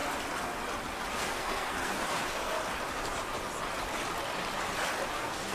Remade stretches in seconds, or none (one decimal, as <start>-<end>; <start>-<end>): 1.1-2.6; 5.1-5.5